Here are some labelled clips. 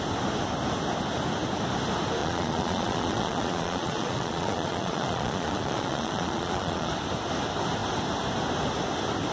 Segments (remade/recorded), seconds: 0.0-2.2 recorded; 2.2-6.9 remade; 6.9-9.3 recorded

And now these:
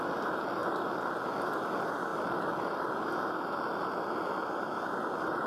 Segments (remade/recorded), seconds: 0.0-5.5 recorded

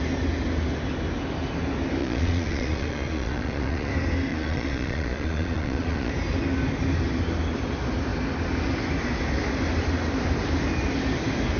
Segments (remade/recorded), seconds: 0.0-2.0 recorded; 2.0-3.9 remade; 3.9-4.3 recorded; 4.3-6.1 remade; 6.1-11.6 recorded

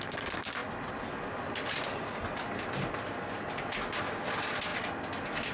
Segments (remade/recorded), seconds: 0.0-5.5 recorded